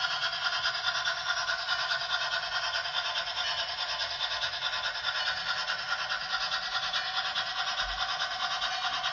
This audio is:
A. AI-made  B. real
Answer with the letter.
B